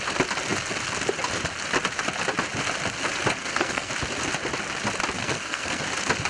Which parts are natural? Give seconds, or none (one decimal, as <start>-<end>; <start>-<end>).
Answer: 0.0-3.4; 3.9-5.2; 5.8-6.3